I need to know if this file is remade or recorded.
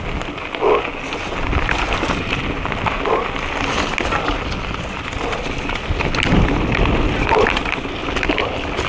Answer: recorded